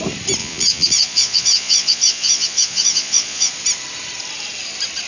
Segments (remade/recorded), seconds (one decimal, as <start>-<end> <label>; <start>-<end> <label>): 0.0-0.4 recorded; 0.4-3.5 remade; 3.5-5.1 recorded